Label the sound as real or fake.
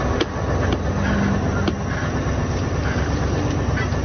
real